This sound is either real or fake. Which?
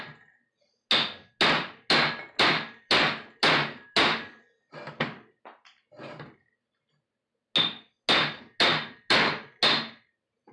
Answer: real